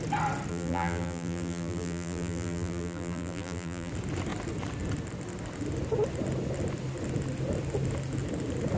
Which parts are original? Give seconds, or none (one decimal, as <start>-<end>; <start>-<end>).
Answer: 0.0-0.5; 3.9-8.8